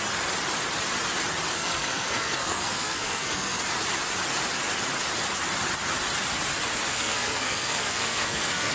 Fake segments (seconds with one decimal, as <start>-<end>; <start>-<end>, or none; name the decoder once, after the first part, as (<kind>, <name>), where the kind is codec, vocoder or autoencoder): 1.5-3.6 (codec, SNAC); 6.9-8.7